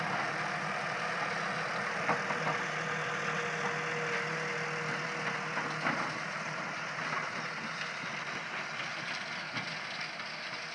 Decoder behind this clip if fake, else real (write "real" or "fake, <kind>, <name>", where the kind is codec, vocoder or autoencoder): real